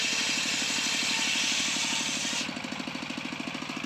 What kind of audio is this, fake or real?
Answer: real